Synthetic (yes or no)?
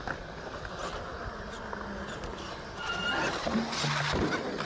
no